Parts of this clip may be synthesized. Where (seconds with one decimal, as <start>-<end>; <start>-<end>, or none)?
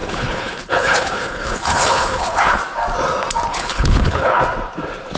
0.0-2.6; 3.5-4.4